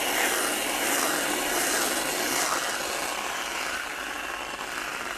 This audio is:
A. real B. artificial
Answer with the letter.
A